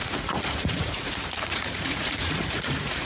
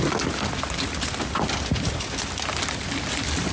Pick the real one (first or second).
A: second